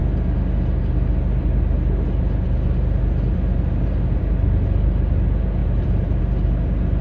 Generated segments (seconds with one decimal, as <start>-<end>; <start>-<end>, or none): 5.6-6.2